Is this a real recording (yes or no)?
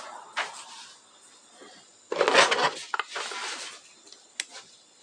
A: yes